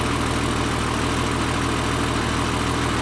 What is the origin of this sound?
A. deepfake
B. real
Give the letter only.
B